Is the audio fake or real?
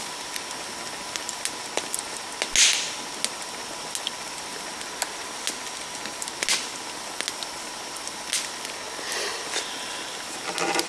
real